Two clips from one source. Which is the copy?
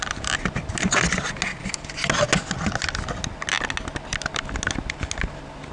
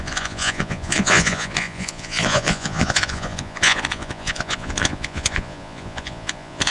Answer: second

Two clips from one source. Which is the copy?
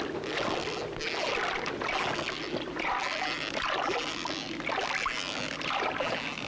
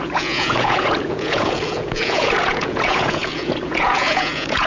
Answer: second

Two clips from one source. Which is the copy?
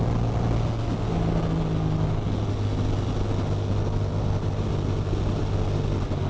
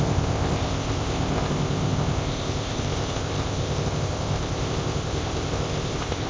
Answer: second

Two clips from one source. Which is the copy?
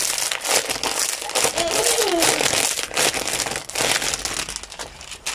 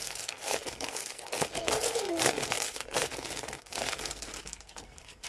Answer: second